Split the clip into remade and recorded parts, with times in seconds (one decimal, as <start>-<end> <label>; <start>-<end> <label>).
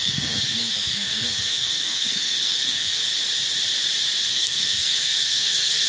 0.0-3.0 remade; 3.0-4.3 recorded; 4.3-5.9 remade